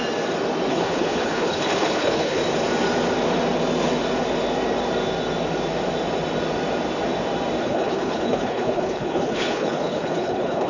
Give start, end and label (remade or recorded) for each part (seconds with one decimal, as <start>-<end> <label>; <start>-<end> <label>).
0.0-0.7 recorded; 0.7-2.4 remade; 2.4-7.6 recorded; 7.6-10.7 remade

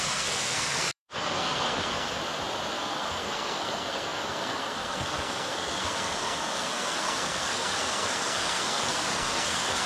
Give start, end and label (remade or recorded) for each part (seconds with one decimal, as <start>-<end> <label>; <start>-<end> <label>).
0.0-2.2 remade; 2.2-2.7 recorded; 2.7-9.9 remade

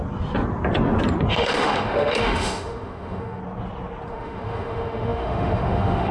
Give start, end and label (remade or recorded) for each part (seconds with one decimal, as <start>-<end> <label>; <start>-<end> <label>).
0.0-1.3 recorded; 1.3-3.4 remade; 3.4-4.1 recorded; 4.1-6.1 remade

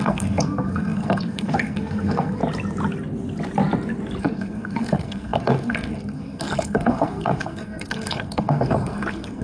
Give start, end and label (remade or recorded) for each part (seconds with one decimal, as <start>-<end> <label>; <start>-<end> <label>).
0.0-2.4 remade; 2.4-4.2 recorded; 4.2-9.4 remade

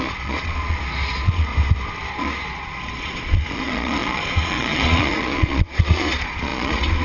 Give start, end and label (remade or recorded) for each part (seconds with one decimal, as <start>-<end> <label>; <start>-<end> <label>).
0.0-1.5 remade; 1.5-2.1 recorded; 2.1-7.0 remade

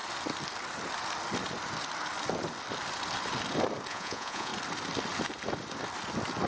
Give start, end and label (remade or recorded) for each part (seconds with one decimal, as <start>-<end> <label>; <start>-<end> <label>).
0.0-3.9 recorded; 3.9-4.5 remade; 4.5-6.5 recorded